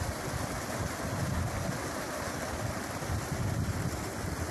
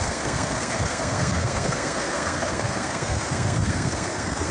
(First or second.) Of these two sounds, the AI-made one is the second